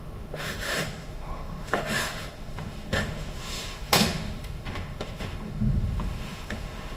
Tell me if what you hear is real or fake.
fake